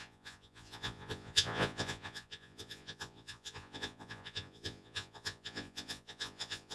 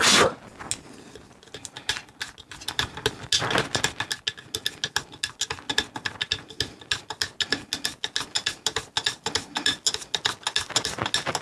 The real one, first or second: second